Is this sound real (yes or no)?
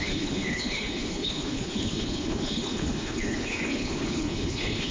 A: no